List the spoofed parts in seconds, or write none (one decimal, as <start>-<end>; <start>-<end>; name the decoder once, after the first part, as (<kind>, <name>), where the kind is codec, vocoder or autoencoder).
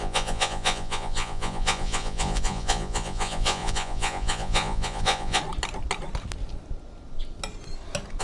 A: 0.0-5.4 (vocoder, Vocos)